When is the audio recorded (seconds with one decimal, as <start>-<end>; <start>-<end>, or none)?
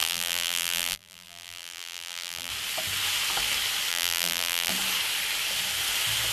2.5-3.9; 4.7-6.3